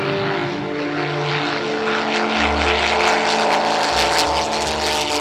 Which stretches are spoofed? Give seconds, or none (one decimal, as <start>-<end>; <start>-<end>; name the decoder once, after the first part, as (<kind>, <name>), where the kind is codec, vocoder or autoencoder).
none